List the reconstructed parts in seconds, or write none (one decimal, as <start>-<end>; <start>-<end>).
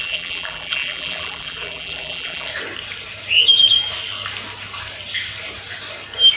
0.0-2.5